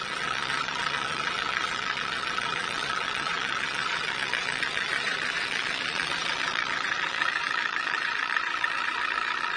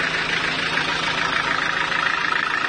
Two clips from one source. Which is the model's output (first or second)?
first